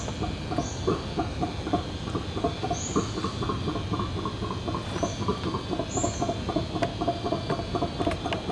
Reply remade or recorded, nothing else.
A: recorded